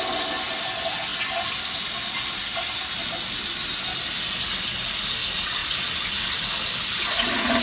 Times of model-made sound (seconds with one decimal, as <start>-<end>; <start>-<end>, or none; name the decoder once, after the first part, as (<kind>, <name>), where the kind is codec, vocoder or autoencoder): none